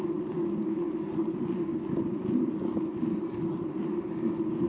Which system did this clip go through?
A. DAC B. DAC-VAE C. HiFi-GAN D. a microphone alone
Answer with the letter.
D